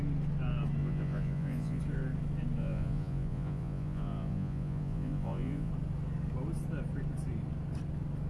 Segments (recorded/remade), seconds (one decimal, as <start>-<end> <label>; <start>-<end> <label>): 0.0-0.8 recorded; 0.8-1.8 remade; 1.8-2.6 recorded; 2.6-5.7 remade; 5.7-8.3 recorded